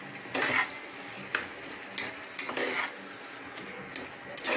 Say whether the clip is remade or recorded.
recorded